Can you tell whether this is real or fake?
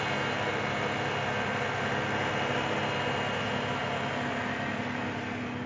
real